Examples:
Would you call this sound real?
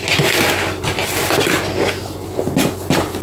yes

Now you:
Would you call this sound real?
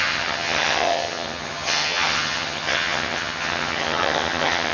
no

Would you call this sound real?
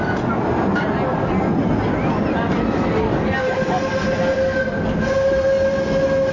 yes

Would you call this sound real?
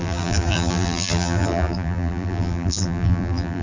no